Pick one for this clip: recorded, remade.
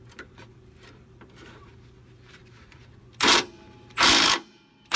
remade